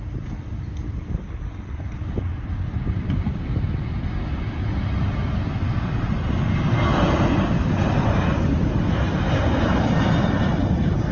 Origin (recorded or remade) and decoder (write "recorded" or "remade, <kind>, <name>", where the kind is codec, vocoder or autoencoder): recorded